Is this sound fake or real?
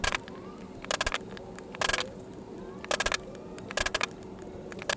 real